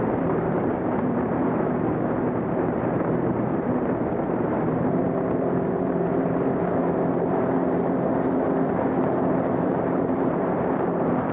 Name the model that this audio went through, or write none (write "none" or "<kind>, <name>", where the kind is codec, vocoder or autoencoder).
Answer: vocoder, BigVGAN v2